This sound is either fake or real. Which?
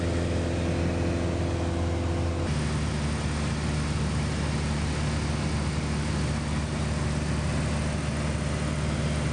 real